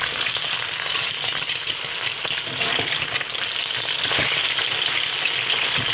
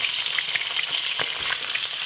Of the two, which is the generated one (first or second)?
second